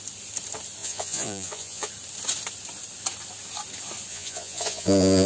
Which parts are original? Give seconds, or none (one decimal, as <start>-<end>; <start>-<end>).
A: 0.0-0.8; 1.9-4.1